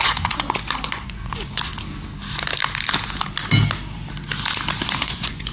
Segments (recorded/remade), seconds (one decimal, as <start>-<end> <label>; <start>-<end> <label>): 0.0-1.7 remade; 1.7-5.0 recorded; 5.0-5.5 remade